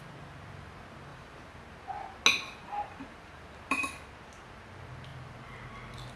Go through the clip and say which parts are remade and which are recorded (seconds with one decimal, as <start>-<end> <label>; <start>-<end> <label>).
0.0-1.1 recorded; 1.1-1.6 remade; 1.6-2.6 recorded; 2.6-3.9 remade; 3.9-6.2 recorded